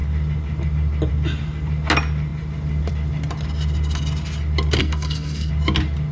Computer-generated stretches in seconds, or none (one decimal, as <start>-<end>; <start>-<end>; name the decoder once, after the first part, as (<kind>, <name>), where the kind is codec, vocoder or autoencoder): 4.8-5.5 (codec, SNAC)